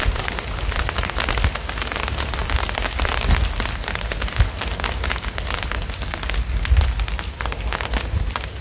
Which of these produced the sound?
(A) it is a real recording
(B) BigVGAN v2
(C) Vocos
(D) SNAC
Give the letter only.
A